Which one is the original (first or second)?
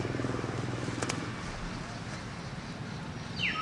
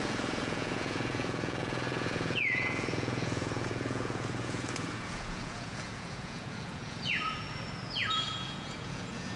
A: first